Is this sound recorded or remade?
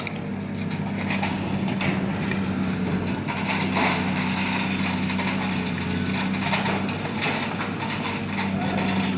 recorded